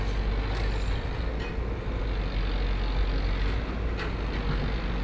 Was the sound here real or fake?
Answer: real